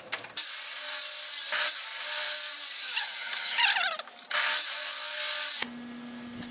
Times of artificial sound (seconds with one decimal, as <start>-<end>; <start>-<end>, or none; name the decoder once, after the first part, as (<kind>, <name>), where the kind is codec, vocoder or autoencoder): none